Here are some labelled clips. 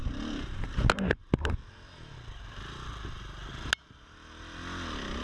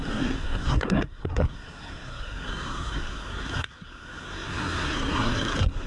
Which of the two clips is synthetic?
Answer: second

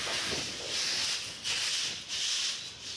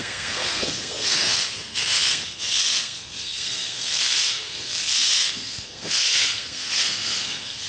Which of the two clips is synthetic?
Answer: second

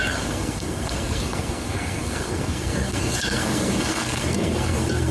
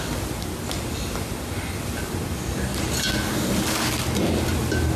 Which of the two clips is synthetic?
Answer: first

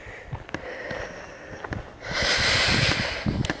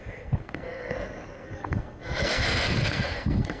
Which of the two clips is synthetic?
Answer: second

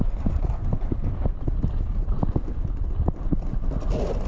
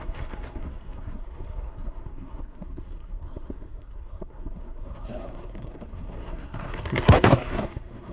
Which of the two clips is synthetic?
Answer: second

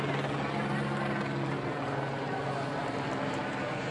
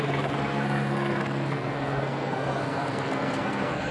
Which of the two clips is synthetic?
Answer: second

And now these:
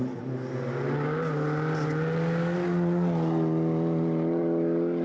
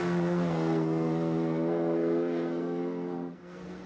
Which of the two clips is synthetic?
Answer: second